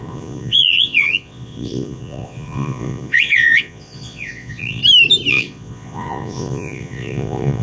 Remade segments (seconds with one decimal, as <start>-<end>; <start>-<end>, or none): 0.0-4.8; 5.3-7.6